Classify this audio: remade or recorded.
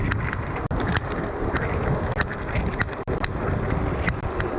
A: recorded